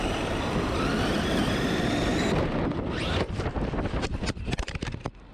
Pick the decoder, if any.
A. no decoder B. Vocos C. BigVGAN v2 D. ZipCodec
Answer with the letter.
A